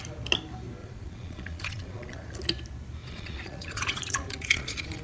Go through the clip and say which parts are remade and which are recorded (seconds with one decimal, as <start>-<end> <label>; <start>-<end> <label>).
0.0-0.8 recorded; 0.8-2.3 remade; 2.3-3.0 recorded; 3.0-5.0 remade